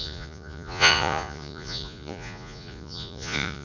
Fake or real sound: fake